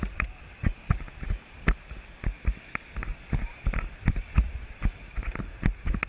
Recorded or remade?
recorded